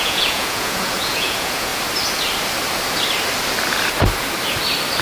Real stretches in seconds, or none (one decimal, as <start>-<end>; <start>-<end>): 1.7-5.0